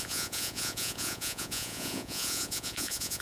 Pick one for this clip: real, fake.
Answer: fake